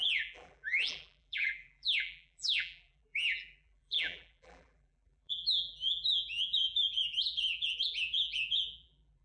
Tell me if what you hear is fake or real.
fake